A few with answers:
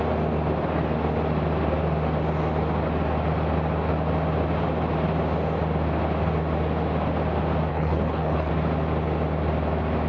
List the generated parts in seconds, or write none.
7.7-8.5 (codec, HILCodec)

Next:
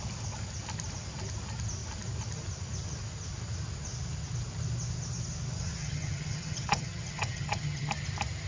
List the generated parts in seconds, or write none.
5.8-7.9 (vocoder, HiFi-GAN)

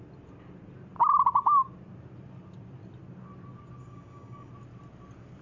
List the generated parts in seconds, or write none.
3.8-4.5 (codec, DAC)

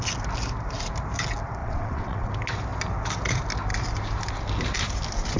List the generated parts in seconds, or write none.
1.6-2.3 (vocoder, WaveNeXt)

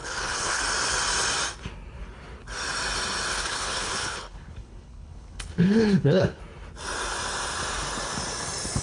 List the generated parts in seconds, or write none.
0.0-0.6 (codec, HILCodec); 3.3-6.4